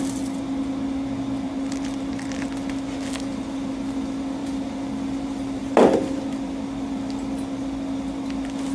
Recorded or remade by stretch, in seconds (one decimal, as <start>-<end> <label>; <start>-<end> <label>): 0.0-8.7 recorded